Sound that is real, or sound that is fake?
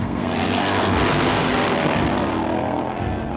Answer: fake